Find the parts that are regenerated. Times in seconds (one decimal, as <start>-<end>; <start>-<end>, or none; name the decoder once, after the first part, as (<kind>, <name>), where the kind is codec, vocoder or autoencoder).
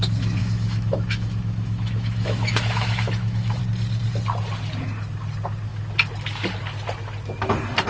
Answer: 0.4-3.6 (autoencoder, DAC-VAE)